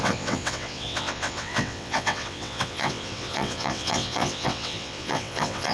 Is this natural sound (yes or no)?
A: no